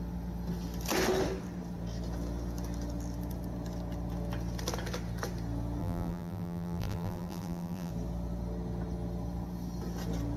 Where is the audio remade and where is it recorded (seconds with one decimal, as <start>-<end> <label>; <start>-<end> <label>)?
0.0-5.8 recorded; 5.8-7.9 remade; 7.9-10.4 recorded